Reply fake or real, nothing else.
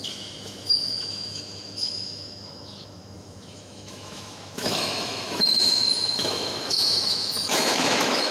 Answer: fake